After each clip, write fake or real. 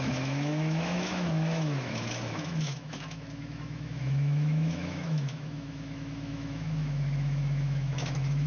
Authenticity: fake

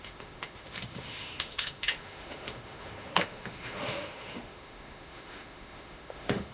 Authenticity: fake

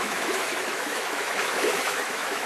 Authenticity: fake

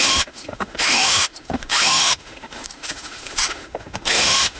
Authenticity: fake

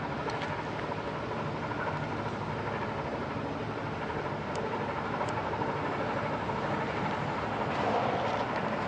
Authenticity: real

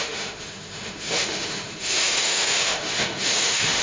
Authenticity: fake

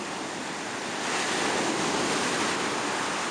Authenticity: real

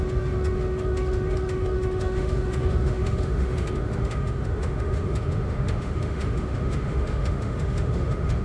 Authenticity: fake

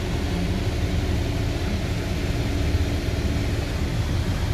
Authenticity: real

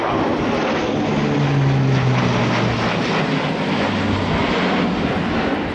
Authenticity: real